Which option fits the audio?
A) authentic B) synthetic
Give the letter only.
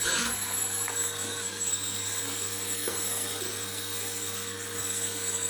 B